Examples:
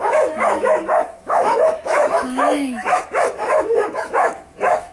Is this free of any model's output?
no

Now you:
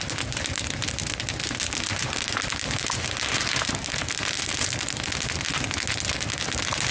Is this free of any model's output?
yes